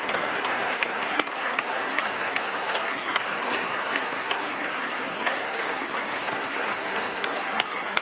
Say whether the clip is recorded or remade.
remade